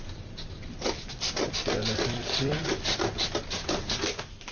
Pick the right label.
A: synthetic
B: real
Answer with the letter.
A